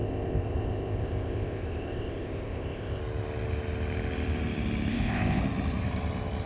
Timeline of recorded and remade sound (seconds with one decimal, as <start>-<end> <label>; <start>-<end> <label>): 0.0-3.0 remade; 3.0-4.9 recorded; 4.9-5.4 remade; 5.4-6.5 recorded